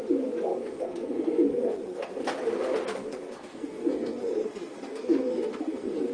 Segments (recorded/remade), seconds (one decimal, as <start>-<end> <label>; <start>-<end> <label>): 0.0-0.5 recorded; 0.5-2.2 remade; 2.2-3.0 recorded; 3.0-6.1 remade